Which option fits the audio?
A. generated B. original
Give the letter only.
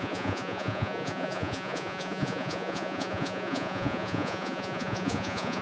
A